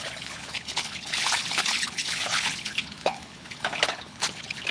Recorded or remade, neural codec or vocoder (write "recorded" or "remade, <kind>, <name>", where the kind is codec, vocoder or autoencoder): remade, codec, HILCodec